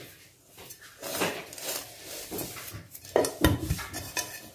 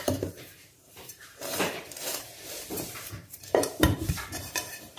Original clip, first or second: first